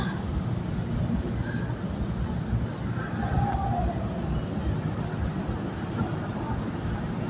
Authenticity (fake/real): real